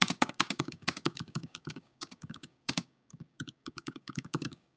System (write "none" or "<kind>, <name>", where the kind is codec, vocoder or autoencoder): codec, DAC